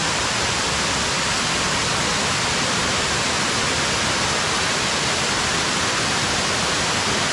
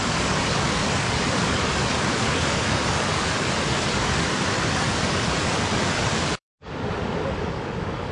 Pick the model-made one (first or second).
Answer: second